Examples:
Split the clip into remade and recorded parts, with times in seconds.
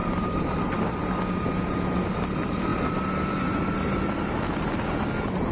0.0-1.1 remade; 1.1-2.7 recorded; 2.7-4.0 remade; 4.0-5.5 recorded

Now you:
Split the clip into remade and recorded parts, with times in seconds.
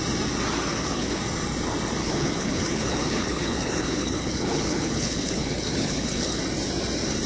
0.0-0.7 recorded; 0.7-1.2 remade; 1.2-2.0 recorded; 2.0-6.4 remade; 6.4-7.3 recorded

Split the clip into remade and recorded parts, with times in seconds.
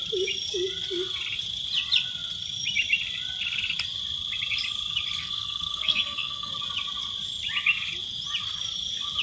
0.0-5.2 recorded; 5.2-6.5 remade; 6.5-9.2 recorded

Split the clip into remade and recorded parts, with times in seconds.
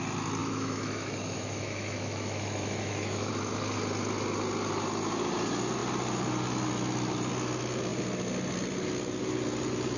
0.0-0.4 recorded; 0.4-3.3 remade; 3.3-10.0 recorded